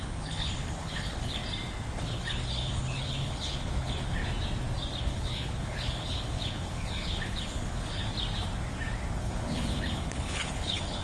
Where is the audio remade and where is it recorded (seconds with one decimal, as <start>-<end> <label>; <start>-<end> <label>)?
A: 0.0-1.4 remade; 1.4-2.0 recorded; 2.0-4.2 remade; 4.2-5.0 recorded; 5.0-8.0 remade; 8.0-9.2 recorded; 9.2-11.0 remade